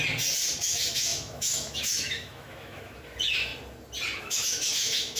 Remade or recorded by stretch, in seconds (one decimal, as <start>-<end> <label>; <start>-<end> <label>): 0.0-0.6 recorded; 0.6-3.5 remade; 3.5-4.2 recorded; 4.2-5.2 remade